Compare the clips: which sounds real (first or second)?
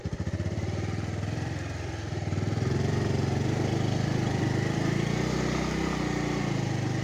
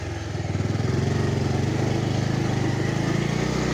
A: second